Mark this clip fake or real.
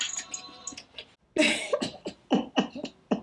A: real